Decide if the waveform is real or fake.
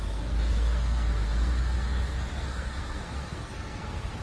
fake